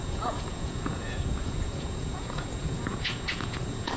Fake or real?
fake